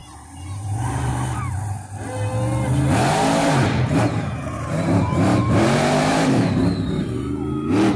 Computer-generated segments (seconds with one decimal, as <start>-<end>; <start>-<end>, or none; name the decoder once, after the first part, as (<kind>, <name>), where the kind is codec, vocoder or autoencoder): 0.0-1.1 (vocoder, BigVGAN v2); 3.1-6.6